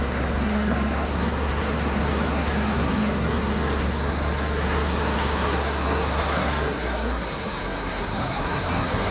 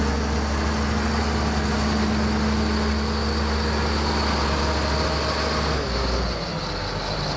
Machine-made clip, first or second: first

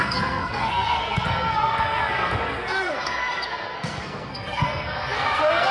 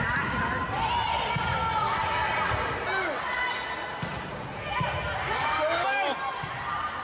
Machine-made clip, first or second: first